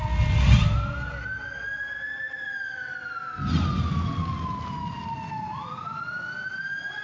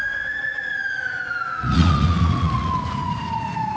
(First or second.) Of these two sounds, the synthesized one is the second